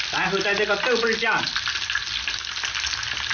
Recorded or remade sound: recorded